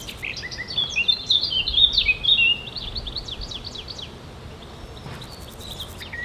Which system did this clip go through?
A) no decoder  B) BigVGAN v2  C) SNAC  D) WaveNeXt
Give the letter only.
A